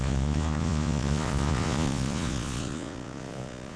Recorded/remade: remade